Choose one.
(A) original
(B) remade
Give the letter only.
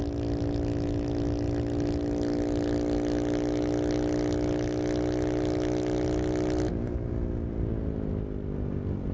A